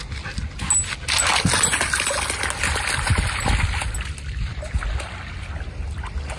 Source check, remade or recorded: recorded